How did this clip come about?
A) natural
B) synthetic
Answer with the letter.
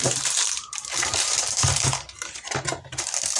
B